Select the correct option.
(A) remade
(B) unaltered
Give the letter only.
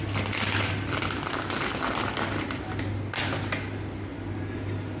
B